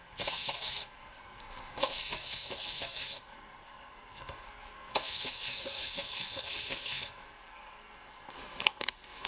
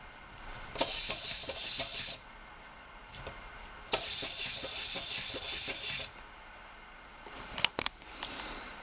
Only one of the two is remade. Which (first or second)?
first